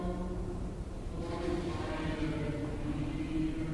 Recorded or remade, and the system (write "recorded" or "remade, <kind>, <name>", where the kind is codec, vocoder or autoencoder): recorded